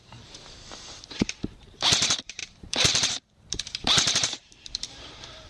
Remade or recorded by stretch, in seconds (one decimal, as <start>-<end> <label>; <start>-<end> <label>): 0.0-5.5 remade